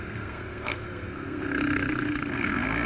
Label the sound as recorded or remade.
remade